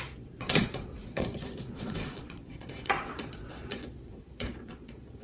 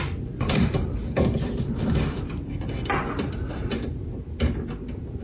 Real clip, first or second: second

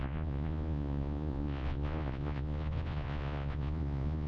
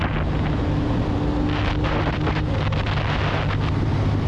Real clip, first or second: second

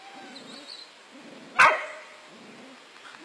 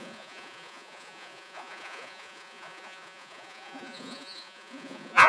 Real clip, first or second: first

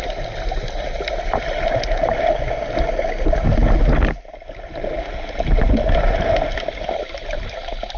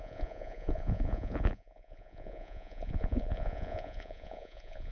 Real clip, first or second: first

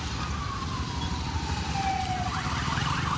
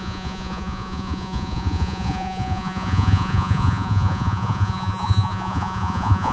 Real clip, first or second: first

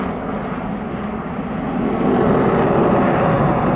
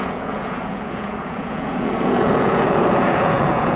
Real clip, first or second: first